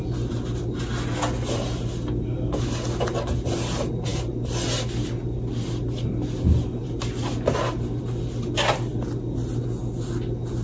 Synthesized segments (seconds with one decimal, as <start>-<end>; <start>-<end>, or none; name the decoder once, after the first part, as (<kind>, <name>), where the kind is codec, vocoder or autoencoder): none